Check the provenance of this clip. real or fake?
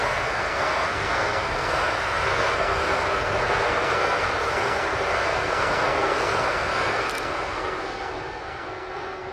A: fake